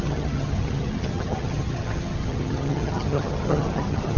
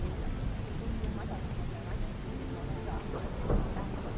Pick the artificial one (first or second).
first